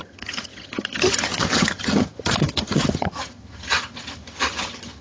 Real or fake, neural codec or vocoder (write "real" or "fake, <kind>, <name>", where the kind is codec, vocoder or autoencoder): fake, vocoder, HiFi-GAN